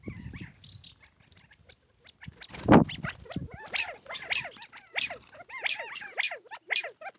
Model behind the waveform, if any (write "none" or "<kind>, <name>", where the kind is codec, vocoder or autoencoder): none